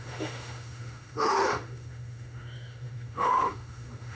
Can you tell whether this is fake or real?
fake